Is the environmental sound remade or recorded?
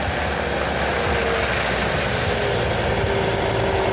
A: recorded